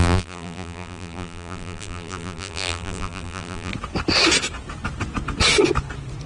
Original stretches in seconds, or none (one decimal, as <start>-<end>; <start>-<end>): 3.7-6.3